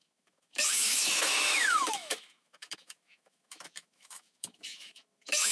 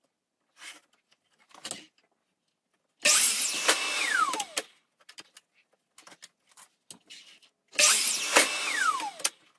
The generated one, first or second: first